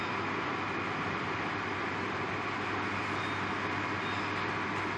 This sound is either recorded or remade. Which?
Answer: recorded